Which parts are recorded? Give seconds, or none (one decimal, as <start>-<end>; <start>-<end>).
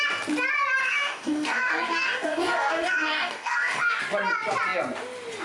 0.0-0.8; 4.0-5.4